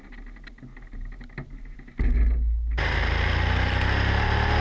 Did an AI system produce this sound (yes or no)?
no